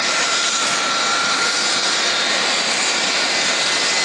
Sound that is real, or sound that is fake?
real